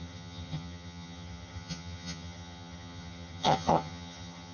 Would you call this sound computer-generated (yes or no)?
yes